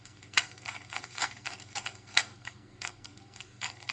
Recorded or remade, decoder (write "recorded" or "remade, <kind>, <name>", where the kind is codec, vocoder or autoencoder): remade, codec, SNAC